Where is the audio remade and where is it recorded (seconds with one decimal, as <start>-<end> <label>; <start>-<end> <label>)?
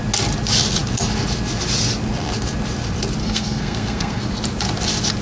0.0-3.2 recorded; 3.2-4.2 remade; 4.2-5.2 recorded